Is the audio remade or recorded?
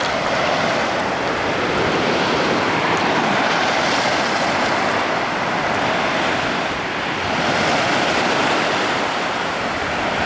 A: remade